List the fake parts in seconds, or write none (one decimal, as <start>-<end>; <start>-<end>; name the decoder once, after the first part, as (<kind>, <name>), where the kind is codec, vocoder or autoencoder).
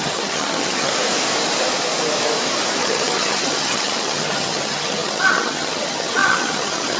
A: 0.0-0.9 (vocoder, HiFi-GAN); 2.8-7.0